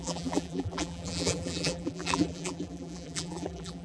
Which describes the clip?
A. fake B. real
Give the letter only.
A